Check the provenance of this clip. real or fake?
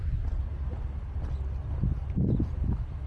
real